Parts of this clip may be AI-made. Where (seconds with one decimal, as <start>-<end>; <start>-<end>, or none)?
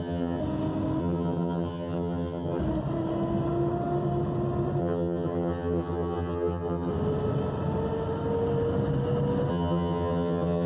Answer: 0.0-0.4; 1.0-2.6; 4.8-6.9; 9.5-10.7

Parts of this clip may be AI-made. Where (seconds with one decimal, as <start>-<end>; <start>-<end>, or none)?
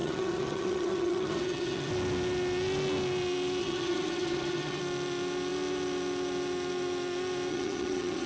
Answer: 0.0-1.9; 3.6-4.8; 7.5-8.3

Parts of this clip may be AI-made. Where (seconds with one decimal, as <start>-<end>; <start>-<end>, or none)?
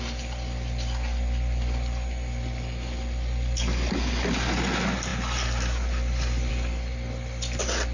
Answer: none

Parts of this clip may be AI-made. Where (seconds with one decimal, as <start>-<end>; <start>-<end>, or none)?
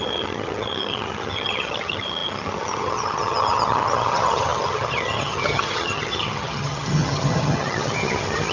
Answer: 0.0-8.5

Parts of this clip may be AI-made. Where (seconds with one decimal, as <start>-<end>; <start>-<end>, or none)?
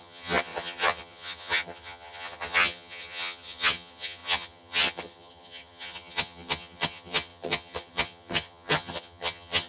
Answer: 0.0-9.7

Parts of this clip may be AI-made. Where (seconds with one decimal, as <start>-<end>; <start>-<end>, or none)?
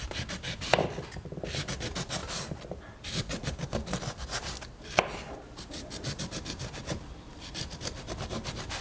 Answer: none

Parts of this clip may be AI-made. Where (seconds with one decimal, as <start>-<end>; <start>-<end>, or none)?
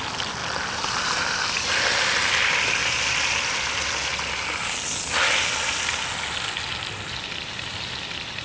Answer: none